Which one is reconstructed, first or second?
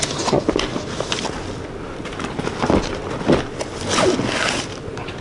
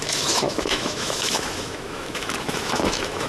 second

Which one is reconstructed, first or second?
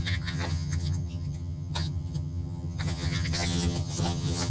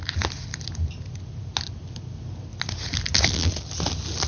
first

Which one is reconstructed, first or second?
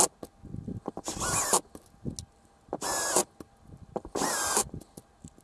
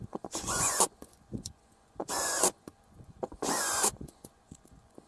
second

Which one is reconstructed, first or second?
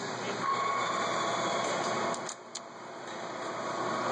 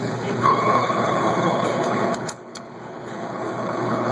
second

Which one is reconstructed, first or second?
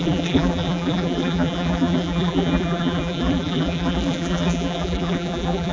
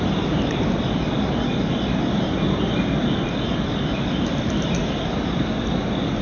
first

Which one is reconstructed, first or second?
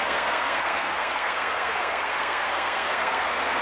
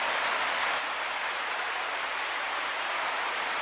first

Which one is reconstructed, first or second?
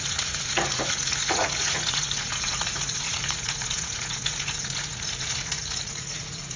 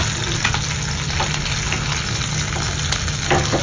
first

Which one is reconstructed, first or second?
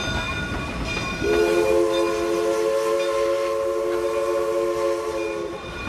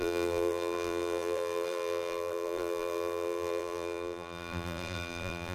second